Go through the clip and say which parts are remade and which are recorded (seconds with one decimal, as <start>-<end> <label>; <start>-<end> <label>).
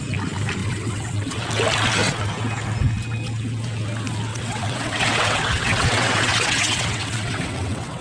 0.0-0.6 recorded; 0.6-1.4 remade; 1.4-4.3 recorded; 4.3-8.0 remade